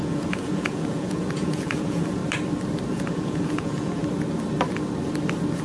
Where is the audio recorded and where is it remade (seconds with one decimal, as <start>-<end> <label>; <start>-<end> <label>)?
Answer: 0.0-2.2 remade; 2.2-2.9 recorded; 2.9-4.0 remade; 4.0-5.6 recorded